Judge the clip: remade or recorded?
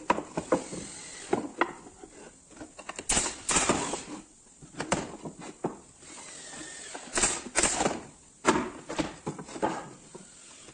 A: recorded